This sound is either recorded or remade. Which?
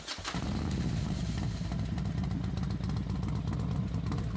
recorded